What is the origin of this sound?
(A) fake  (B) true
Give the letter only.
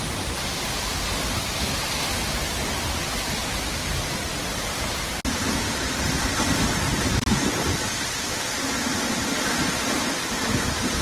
A